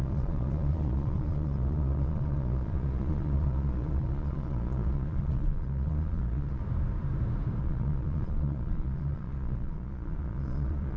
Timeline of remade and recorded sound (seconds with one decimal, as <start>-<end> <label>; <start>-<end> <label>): 0.0-6.6 remade; 6.6-7.6 recorded; 7.6-11.0 remade